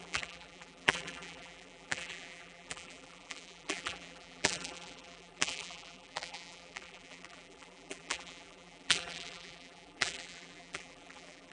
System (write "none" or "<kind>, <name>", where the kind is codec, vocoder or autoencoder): vocoder, BigVGAN v2